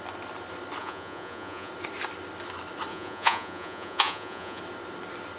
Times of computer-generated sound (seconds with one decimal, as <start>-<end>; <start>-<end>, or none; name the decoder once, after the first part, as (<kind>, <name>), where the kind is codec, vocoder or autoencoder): 0.8-1.7 (vocoder, Vocos); 2.9-4.6